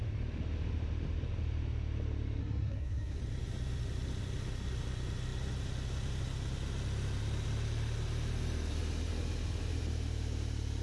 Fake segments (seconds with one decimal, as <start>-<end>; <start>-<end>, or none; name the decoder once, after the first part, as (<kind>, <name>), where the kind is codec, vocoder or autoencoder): 2.4-3.2 (codec, SNAC)